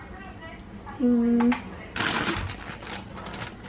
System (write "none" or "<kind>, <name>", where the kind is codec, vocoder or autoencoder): none